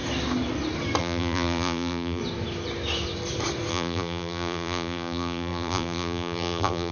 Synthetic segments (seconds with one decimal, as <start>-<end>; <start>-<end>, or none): 1.0-2.2; 3.7-6.9